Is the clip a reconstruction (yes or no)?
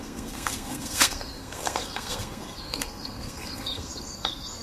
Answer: yes